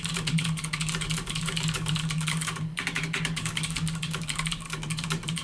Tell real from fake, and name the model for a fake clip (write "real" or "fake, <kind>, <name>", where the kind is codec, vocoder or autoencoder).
fake, codec, DAC